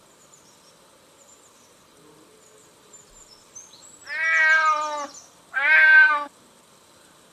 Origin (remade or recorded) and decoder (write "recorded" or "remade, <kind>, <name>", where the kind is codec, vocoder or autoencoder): recorded